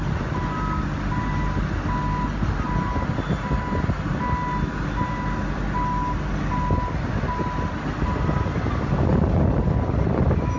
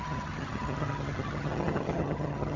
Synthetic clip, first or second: second